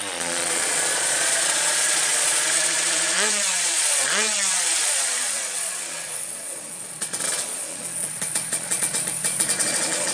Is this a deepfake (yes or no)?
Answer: yes